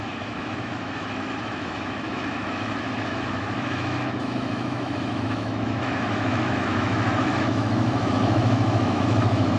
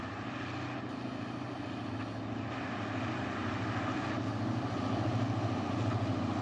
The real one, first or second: second